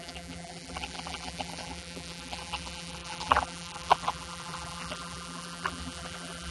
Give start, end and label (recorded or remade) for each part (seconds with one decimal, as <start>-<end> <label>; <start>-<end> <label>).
0.0-6.5 remade